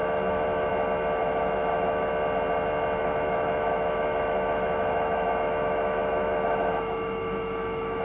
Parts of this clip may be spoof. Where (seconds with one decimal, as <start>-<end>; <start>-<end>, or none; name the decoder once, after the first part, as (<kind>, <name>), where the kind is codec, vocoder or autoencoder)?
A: 0.0-0.7 (autoencoder, DAC-VAE); 1.2-2.1; 3.0-8.0